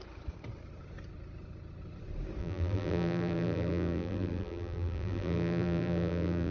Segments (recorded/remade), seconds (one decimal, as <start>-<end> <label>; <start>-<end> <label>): 0.0-2.4 recorded; 2.4-6.5 remade